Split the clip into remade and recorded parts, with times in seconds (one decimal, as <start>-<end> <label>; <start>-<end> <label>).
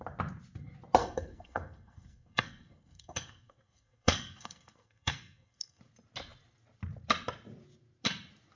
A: 0.0-1.0 recorded; 1.0-5.8 remade; 5.8-8.6 recorded